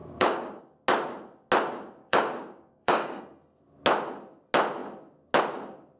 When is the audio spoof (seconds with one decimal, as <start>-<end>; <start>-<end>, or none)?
0.0-0.6; 2.0-3.2